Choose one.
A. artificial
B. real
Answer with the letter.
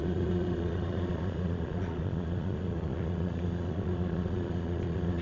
A